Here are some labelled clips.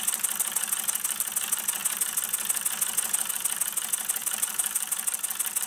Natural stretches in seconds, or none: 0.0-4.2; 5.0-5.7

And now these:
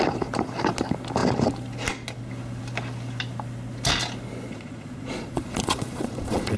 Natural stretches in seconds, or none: 0.0-4.5

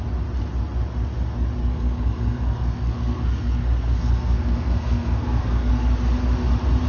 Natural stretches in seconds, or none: 0.0-1.6; 5.7-6.9

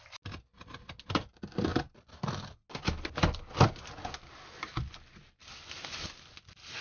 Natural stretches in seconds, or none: 0.0-6.8

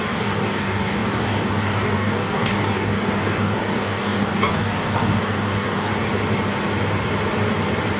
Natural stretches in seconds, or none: 5.9-8.0

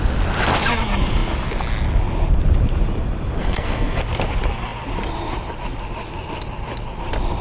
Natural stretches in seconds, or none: 0.0-3.4; 4.0-7.4

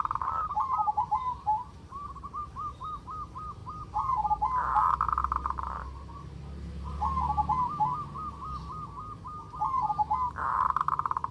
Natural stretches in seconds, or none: 5.2-10.4

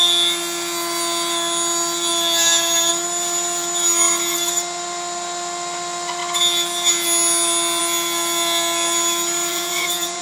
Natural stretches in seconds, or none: 0.0-9.5